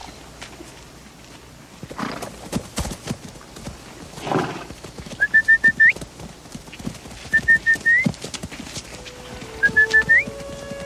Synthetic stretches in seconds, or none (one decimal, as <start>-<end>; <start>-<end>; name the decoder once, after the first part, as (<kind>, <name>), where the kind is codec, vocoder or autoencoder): none